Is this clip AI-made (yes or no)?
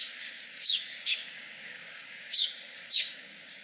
yes